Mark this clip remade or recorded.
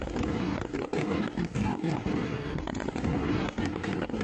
remade